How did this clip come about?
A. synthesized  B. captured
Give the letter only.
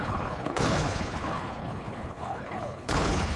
A